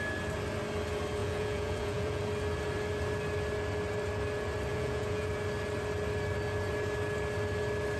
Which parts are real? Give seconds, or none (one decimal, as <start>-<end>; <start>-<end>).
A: 0.0-1.2; 2.2-4.7; 5.3-8.0